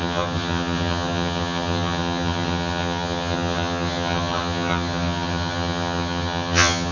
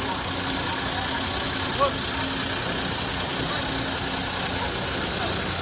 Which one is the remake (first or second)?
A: first